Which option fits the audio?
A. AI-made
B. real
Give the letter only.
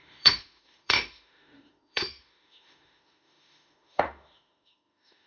A